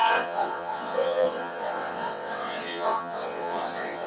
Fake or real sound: fake